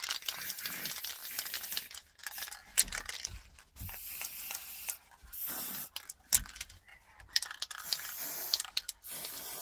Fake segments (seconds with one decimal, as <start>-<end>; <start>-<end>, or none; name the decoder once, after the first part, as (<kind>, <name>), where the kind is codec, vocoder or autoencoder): none